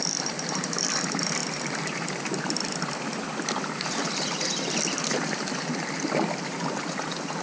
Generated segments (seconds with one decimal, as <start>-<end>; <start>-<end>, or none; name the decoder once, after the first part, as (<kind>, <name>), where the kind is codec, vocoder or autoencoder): 1.4-5.8 (vocoder, BigVGAN v2)